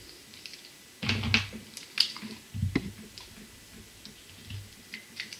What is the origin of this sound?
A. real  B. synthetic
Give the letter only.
A